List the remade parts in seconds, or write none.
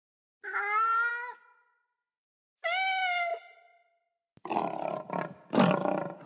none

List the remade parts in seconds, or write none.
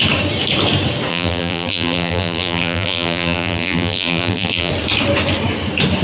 1.1-4.7 (vocoder, BigVGAN v2)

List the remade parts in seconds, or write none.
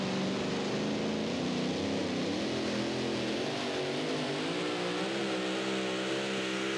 none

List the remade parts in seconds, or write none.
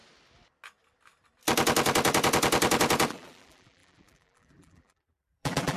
3.1-5.8 (vocoder, BigVGAN v2)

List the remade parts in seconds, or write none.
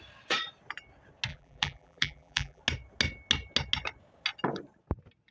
1.3-2.6 (vocoder, BigVGAN v2)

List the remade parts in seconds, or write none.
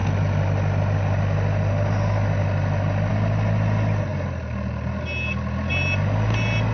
none